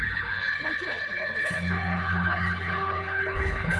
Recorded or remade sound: remade